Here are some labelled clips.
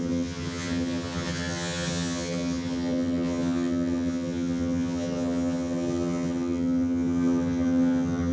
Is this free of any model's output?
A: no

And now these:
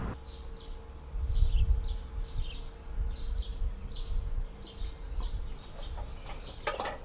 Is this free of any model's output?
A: yes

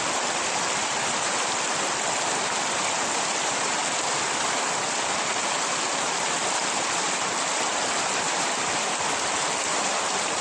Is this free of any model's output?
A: yes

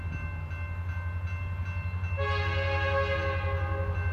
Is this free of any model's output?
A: yes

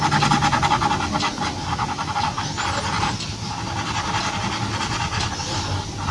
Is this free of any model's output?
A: yes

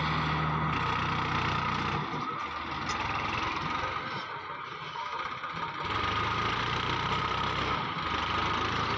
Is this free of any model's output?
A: yes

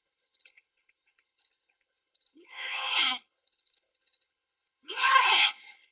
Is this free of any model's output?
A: no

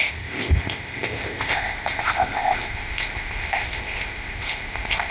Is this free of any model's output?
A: no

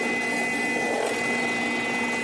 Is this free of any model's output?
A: yes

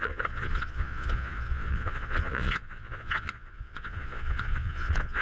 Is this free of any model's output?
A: no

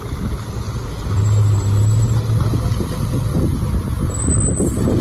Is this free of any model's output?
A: yes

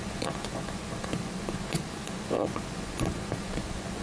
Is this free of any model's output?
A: no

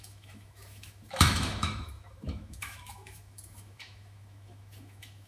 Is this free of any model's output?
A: no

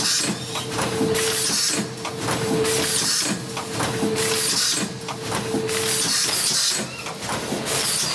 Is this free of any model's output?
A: yes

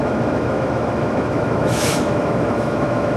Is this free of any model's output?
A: no